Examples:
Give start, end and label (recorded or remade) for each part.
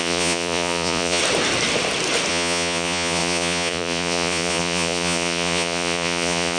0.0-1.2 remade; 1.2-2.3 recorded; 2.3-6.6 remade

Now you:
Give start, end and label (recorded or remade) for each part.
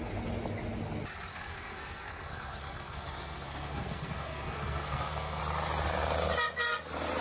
0.0-1.3 recorded; 1.3-5.4 remade; 5.4-7.2 recorded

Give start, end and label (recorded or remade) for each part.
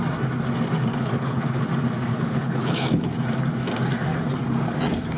0.0-0.9 recorded; 0.9-1.6 remade; 1.6-2.1 recorded; 2.1-3.1 remade; 3.1-5.2 recorded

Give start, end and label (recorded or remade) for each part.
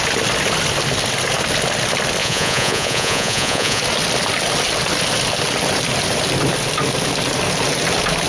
0.0-2.2 recorded; 2.2-3.8 remade; 3.8-8.3 recorded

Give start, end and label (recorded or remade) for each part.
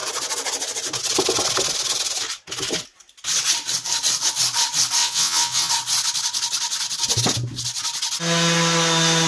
0.0-5.0 recorded; 5.0-5.7 remade; 5.7-9.3 recorded